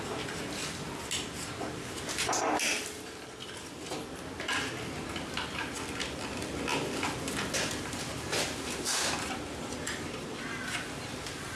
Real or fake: real